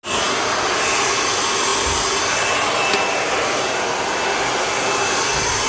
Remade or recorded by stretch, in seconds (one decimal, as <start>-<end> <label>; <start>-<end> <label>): 0.0-5.7 recorded